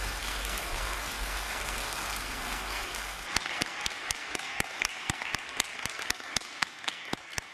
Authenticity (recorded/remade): remade